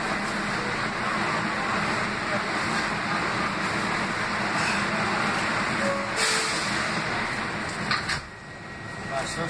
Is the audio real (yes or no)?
yes